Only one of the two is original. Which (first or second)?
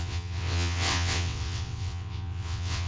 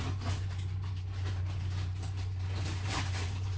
second